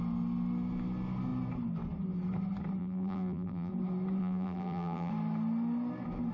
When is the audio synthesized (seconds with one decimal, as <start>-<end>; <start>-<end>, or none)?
2.8-3.7; 4.2-5.1